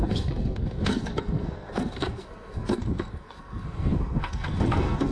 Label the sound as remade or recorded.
remade